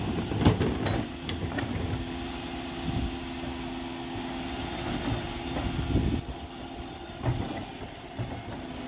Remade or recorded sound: recorded